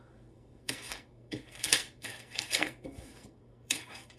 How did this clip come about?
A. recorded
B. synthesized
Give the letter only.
B